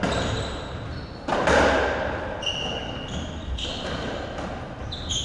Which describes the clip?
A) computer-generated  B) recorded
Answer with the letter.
B